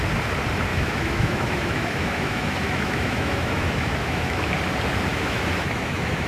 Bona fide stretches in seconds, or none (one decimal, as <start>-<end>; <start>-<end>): 0.0-0.7; 4.5-5.1